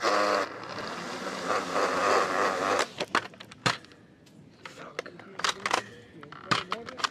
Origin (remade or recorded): recorded